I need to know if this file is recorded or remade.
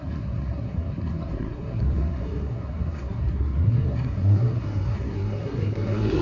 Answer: remade